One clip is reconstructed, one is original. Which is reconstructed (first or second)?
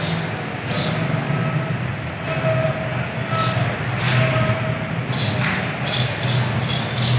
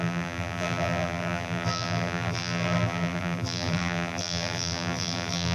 second